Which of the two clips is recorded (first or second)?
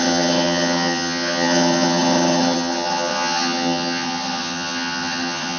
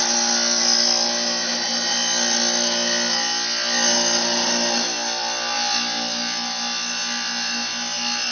second